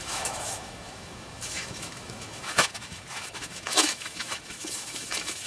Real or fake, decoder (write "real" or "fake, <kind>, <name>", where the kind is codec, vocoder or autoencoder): fake, autoencoder, DAC-VAE